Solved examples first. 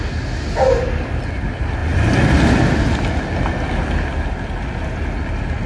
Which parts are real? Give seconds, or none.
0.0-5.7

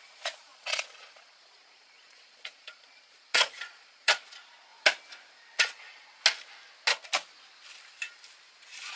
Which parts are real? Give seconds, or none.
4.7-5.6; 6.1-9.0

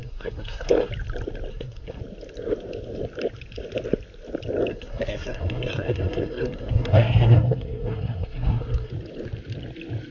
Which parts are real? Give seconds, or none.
0.9-1.5; 2.0-4.7; 8.9-10.1

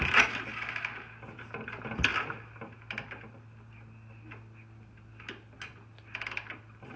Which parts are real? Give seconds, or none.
0.0-7.0